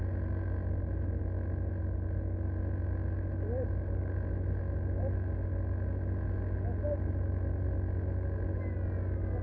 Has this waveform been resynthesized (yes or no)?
no